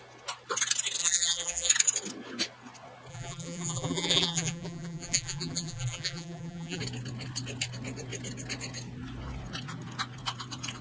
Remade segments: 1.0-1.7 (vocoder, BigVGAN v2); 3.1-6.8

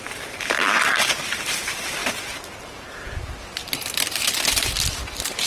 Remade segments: 0.0-3.6 (vocoder, BigVGAN v2)

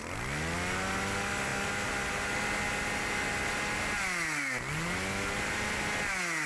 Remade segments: none

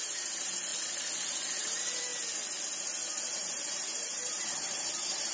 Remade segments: 0.0-0.7 (vocoder, BigVGAN v2); 1.6-2.1; 2.6-5.3

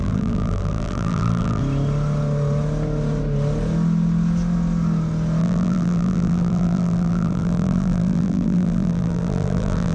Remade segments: 0.0-1.6 (vocoder, BigVGAN v2); 5.4-9.9

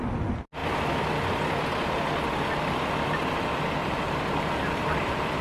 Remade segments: 3.8-5.4 (vocoder, BigVGAN v2)

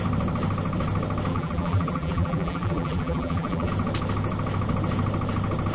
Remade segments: 1.3-3.7 (vocoder, BigVGAN v2)